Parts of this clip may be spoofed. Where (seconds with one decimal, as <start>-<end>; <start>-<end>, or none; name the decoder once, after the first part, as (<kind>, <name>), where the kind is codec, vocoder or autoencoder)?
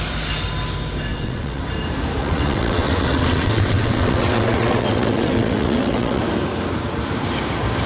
1.1-1.6 (vocoder, WaveNeXt); 2.2-6.2